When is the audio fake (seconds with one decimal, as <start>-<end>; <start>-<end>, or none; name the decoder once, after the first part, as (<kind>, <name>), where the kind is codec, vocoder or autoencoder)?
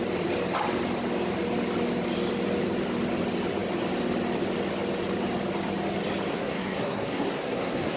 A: 6.3-8.0 (codec, SNAC)